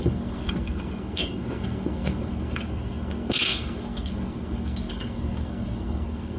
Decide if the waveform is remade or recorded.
remade